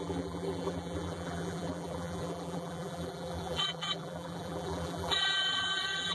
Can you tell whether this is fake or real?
fake